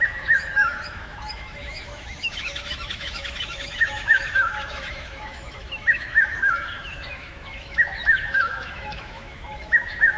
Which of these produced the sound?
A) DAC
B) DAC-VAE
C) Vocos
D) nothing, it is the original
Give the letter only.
B